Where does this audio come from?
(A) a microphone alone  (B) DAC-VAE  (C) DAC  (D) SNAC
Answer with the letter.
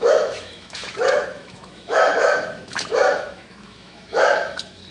B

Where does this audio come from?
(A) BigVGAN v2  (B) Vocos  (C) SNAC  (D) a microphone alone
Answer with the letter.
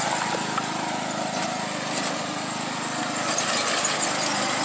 D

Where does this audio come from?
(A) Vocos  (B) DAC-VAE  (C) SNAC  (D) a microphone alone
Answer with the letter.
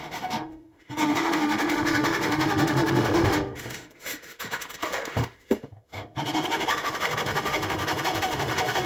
B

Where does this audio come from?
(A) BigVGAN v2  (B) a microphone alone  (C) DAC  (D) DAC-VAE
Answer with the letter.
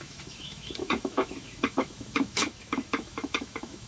D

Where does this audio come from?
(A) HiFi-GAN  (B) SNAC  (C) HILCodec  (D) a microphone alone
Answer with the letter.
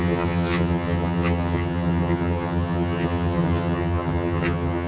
A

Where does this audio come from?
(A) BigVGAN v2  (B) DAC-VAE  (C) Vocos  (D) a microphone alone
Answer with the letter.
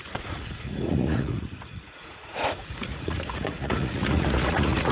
C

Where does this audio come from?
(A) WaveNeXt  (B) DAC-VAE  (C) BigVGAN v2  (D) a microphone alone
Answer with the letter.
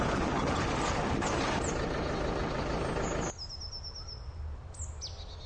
D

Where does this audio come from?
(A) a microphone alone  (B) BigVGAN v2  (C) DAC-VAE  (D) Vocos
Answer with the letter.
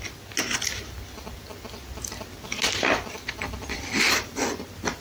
A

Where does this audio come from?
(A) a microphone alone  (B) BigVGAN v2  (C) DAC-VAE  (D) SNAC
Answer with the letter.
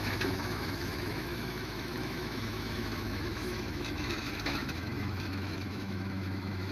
C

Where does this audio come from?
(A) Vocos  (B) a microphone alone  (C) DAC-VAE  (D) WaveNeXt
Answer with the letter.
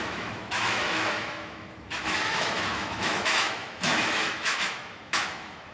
C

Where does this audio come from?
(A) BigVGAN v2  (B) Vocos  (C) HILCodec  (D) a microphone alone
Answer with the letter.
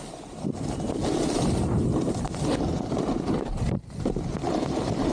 D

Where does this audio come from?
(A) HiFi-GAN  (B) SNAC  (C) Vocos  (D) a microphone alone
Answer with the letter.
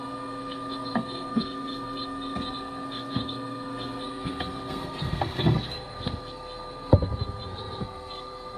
B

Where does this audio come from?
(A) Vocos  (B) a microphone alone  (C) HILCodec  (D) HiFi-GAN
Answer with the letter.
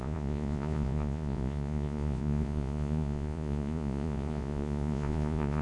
A